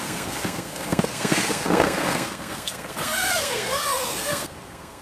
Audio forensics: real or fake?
fake